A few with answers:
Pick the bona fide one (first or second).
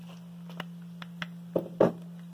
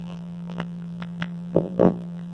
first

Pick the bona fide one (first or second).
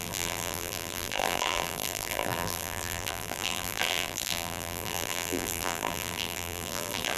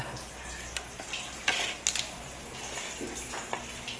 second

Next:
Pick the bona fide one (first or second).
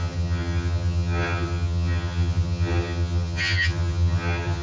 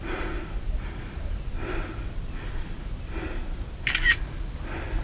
second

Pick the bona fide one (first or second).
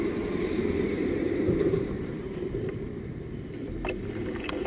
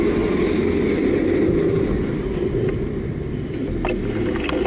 second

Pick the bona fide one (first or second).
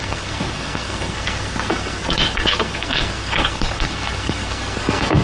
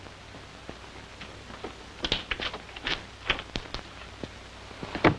second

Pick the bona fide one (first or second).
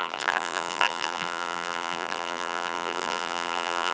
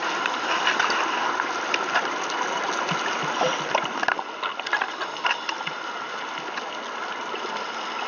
second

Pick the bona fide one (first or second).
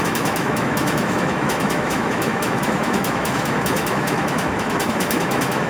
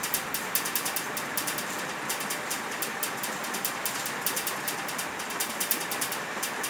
second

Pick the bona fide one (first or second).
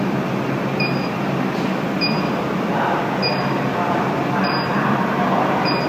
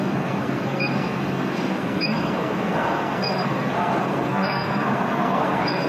first